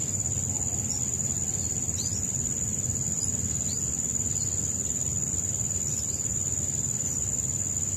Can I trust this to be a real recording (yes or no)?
yes